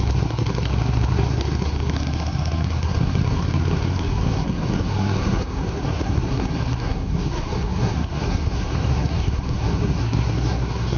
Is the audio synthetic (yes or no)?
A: yes